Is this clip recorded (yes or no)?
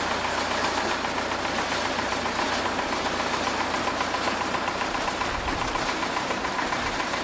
yes